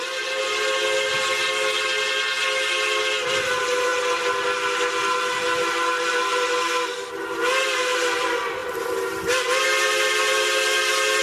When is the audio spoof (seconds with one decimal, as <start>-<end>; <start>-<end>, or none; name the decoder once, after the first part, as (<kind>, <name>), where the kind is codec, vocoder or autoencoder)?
none